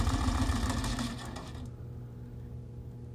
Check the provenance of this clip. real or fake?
real